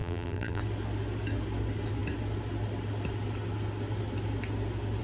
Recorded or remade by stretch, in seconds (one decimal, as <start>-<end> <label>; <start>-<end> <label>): 0.0-0.6 remade; 0.6-5.0 recorded